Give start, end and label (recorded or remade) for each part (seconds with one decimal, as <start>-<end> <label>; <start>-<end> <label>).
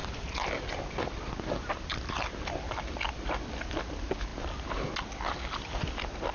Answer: 0.0-6.3 recorded